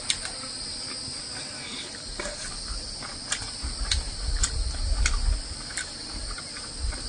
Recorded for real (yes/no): yes